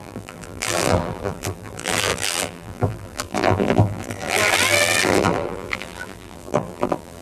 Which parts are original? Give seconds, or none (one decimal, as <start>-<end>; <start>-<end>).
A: none